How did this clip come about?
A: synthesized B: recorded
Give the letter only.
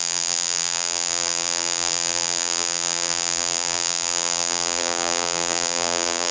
A